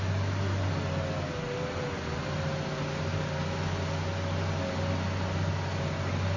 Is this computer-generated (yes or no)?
no